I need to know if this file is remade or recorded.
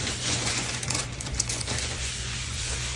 remade